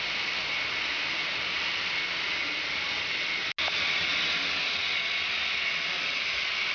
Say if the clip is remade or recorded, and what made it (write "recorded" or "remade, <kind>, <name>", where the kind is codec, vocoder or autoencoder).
recorded